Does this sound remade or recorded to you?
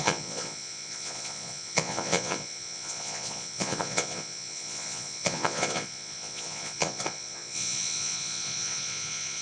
remade